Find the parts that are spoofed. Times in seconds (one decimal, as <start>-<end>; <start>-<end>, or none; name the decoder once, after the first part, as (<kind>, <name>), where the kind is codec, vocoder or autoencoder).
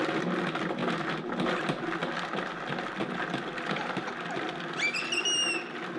none